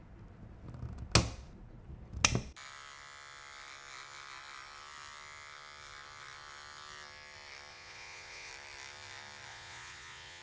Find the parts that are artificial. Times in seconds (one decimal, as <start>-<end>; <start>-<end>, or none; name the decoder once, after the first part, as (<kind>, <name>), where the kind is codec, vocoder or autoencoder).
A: 7.7-8.5 (vocoder, Vocos); 9.5-10.4